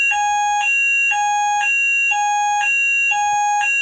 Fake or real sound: real